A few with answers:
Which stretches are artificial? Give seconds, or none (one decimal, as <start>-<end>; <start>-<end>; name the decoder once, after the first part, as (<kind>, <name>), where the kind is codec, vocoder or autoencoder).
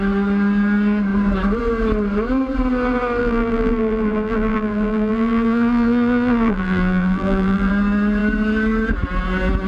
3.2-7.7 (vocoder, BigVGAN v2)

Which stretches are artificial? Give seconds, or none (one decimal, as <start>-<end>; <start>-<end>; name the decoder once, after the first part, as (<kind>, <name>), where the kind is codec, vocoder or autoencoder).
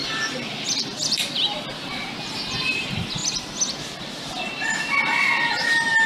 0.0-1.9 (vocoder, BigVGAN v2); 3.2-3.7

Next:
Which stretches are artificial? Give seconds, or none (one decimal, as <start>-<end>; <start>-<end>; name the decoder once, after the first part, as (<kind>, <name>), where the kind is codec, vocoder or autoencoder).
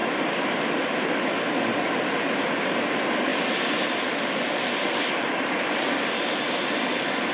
1.7-7.3 (vocoder, BigVGAN v2)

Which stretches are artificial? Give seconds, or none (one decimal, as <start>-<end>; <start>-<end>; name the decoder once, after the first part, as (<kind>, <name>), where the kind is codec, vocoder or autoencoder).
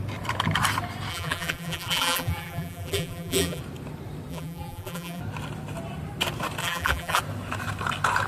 1.1-3.6 (vocoder, BigVGAN v2); 4.3-5.2; 6.6-7.2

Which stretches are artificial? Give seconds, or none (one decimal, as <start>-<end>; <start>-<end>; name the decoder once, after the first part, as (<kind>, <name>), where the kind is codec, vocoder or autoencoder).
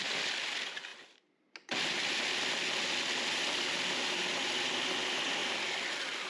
none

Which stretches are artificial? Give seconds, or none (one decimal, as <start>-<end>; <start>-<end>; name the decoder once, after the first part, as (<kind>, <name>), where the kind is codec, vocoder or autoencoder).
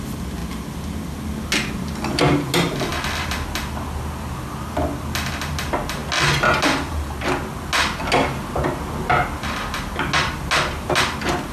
none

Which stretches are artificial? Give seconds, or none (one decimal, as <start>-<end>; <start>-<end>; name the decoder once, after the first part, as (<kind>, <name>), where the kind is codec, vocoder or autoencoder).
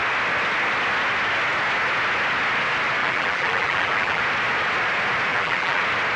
3.0-4.2 (vocoder, BigVGAN v2); 5.3-5.8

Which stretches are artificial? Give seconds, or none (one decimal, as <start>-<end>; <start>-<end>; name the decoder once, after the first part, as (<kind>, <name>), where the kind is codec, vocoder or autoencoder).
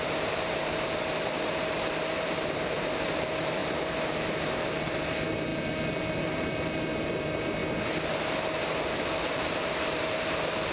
0.0-7.6 (vocoder, BigVGAN v2); 8.9-10.7